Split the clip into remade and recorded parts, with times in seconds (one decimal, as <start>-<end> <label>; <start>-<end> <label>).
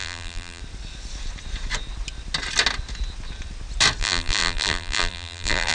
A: 0.0-0.6 remade; 0.6-4.0 recorded; 4.0-5.7 remade